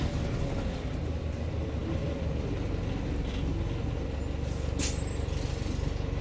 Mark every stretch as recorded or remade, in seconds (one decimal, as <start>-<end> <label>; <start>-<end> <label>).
0.0-6.2 recorded